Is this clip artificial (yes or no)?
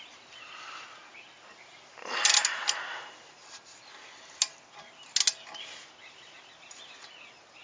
no